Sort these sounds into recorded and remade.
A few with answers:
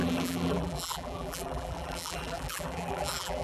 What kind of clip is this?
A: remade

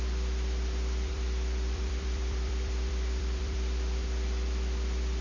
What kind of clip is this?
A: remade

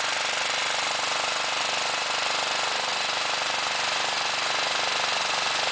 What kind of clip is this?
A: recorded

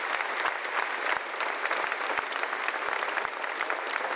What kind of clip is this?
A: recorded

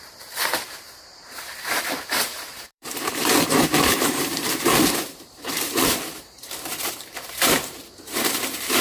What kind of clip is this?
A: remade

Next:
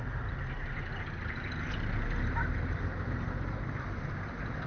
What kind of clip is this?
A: recorded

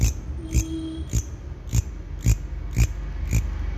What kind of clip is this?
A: recorded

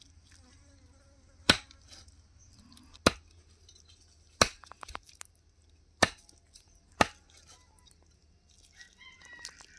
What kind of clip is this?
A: recorded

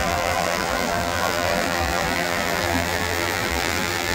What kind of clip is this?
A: remade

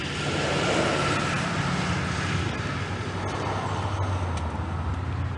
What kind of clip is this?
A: recorded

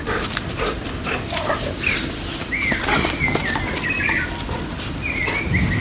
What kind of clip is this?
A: remade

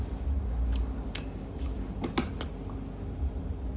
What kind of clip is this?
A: recorded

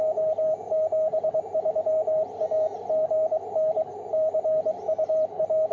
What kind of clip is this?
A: remade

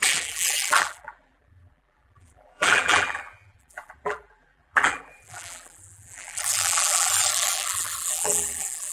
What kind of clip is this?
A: remade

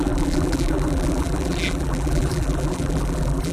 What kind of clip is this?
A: remade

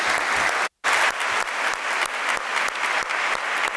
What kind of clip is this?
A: recorded